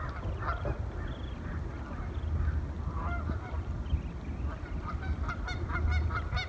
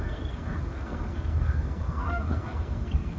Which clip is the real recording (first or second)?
first